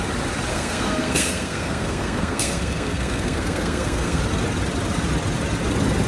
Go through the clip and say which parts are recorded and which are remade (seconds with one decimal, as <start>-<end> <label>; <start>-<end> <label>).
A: 0.0-0.5 recorded; 0.5-4.2 remade; 4.2-6.1 recorded